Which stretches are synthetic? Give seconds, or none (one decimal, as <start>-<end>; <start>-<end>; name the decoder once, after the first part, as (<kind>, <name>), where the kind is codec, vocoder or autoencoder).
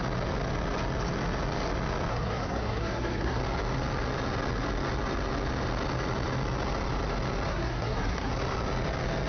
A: 2.1-3.4 (codec, SNAC); 7.5-8.3